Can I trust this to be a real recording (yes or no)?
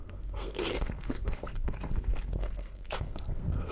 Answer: no